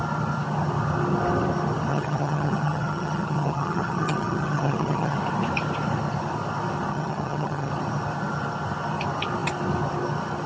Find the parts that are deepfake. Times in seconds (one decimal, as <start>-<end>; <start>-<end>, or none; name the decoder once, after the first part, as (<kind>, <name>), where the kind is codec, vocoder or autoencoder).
1.9-5.2 (vocoder, HiFi-GAN); 6.9-7.7